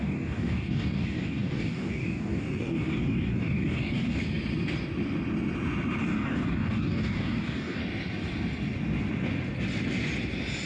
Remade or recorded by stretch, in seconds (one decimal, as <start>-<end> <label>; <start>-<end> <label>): 0.0-4.2 remade; 4.2-6.0 recorded; 6.0-7.8 remade; 7.8-10.7 recorded